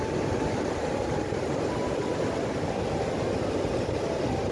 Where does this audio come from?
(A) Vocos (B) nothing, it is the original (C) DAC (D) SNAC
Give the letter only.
B